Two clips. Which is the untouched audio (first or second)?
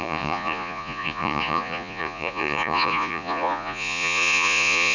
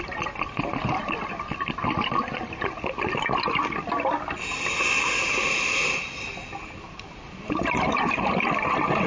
second